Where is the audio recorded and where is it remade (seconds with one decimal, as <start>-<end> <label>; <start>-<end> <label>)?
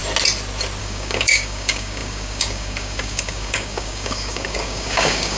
0.0-0.8 recorded; 0.8-5.4 remade